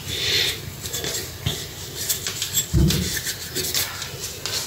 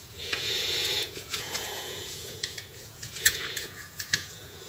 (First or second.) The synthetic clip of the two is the second